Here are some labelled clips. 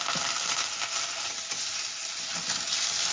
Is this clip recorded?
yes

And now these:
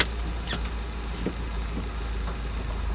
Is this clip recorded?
yes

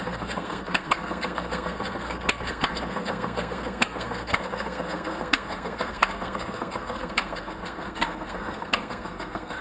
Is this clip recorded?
no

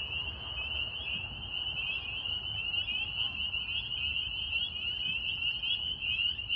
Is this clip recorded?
yes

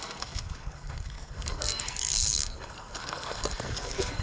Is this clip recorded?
no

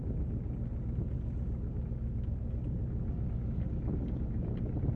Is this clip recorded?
yes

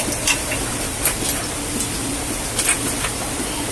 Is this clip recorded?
yes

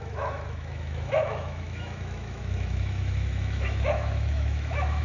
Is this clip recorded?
no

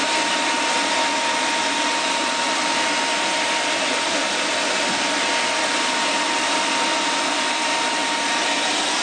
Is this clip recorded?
yes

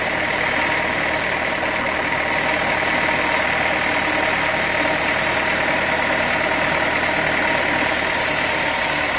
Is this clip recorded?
yes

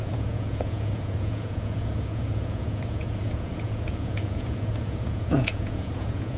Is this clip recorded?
no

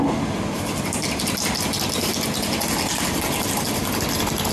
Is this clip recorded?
yes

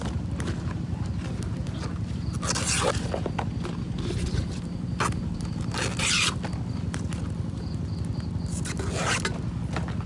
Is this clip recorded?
yes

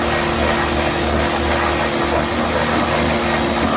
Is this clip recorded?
yes